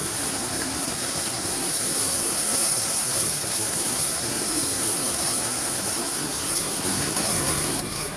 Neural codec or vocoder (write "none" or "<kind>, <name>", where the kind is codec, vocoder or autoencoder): codec, SNAC